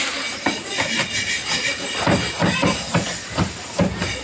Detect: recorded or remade recorded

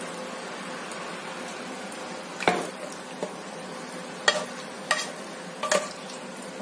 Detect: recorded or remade recorded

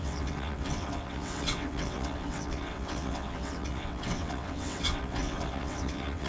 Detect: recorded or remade remade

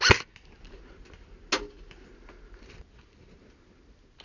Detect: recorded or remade recorded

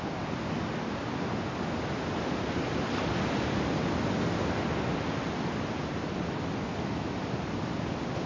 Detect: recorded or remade recorded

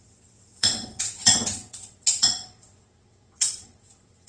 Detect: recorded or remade remade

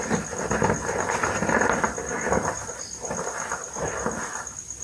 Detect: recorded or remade recorded